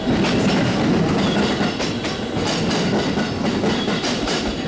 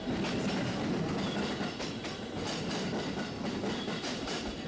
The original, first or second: first